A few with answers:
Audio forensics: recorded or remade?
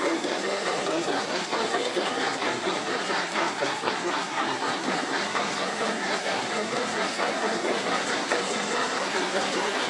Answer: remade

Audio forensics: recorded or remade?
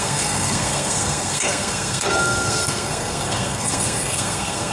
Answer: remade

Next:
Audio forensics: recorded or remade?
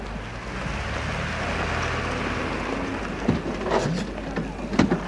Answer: recorded